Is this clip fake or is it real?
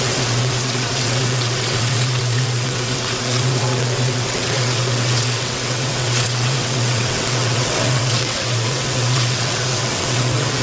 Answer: fake